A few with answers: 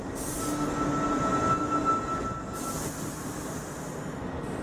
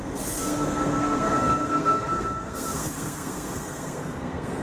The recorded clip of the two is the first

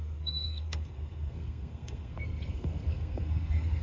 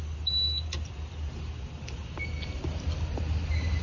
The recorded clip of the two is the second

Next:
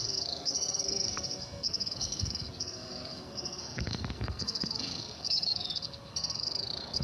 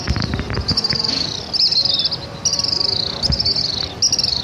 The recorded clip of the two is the second